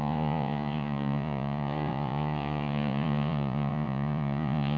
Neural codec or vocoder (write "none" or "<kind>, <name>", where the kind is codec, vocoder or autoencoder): vocoder, Vocos